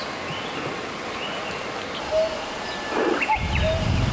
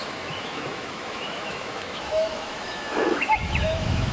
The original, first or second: first